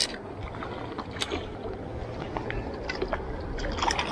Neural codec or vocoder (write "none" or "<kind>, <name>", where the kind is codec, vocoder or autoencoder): none